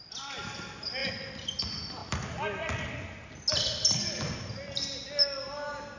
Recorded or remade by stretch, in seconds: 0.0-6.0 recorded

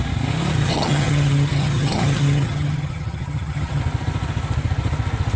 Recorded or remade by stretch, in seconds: 0.0-0.6 recorded; 0.6-3.8 remade; 3.8-5.4 recorded

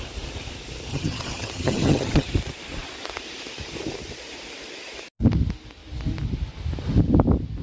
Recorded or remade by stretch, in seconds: 0.0-0.9 recorded; 0.9-2.3 remade; 2.3-7.6 recorded

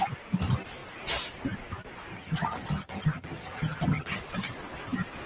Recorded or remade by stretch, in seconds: 0.0-2.1 recorded; 2.1-4.2 remade; 4.2-5.3 recorded

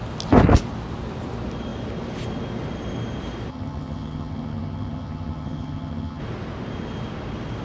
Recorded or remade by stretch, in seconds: 0.0-3.5 recorded; 3.5-6.2 remade; 6.2-7.6 recorded

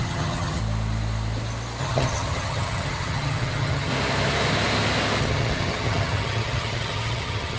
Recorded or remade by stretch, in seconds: 0.0-0.6 remade; 0.6-1.8 recorded; 1.8-3.9 remade; 3.9-5.2 recorded; 5.2-7.6 remade

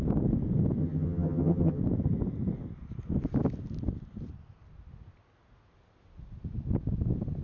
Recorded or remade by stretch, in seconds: 0.0-0.8 recorded; 0.8-1.8 remade; 1.8-7.4 recorded